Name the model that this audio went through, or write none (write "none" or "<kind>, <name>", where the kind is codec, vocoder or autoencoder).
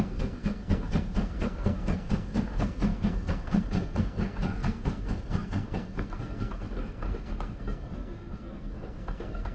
codec, SNAC